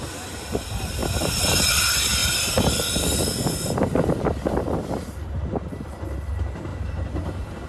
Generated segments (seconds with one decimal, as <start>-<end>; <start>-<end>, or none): 2.2-3.2; 6.7-7.7